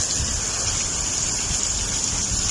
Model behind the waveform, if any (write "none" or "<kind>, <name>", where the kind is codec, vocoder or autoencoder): none